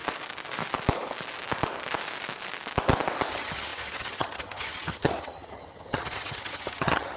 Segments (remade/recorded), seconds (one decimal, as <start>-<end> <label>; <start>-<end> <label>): 0.0-3.3 recorded; 3.3-7.2 remade